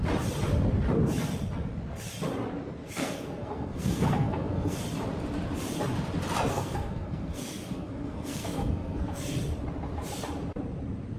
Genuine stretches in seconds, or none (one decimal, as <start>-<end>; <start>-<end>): 0.0-2.8; 4.8-6.5; 9.2-11.2